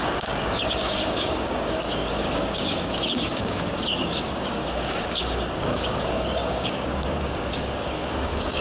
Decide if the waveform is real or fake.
fake